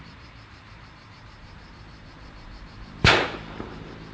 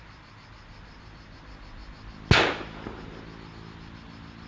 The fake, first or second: first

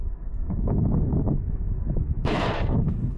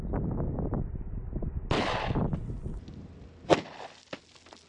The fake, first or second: first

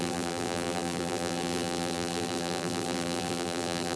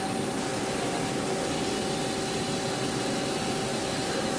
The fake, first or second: first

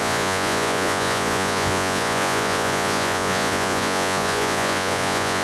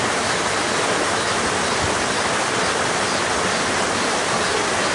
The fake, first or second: first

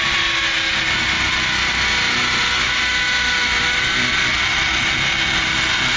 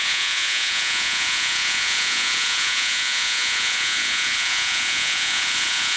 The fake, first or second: second